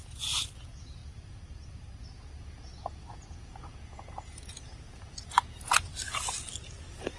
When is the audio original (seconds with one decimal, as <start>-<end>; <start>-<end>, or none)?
1.0-2.2; 5.9-7.2